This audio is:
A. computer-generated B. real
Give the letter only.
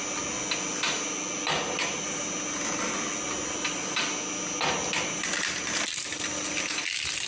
B